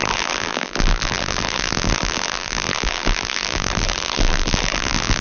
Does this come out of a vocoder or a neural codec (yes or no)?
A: yes